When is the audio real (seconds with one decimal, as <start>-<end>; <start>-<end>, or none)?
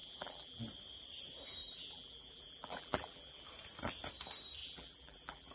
0.6-1.6; 3.4-4.6